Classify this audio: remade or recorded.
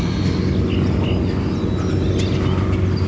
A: recorded